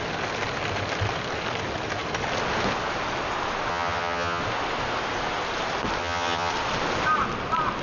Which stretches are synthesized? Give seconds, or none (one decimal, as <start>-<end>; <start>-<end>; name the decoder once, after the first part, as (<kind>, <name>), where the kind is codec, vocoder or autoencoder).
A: 3.7-4.4 (vocoder, HiFi-GAN); 6.0-6.5